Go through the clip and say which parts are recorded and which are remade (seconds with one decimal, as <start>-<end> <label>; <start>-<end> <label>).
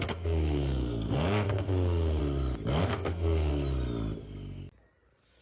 0.0-2.2 remade; 2.2-2.8 recorded; 2.8-3.5 remade; 3.5-5.4 recorded